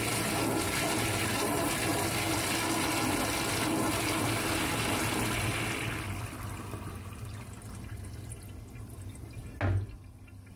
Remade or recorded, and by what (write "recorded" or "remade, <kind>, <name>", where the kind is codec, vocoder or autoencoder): recorded